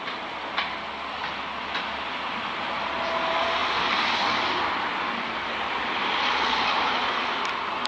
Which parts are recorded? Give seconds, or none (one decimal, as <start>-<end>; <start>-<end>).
0.0-3.6; 6.6-7.9